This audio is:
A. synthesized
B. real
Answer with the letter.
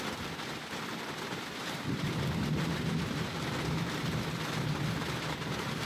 A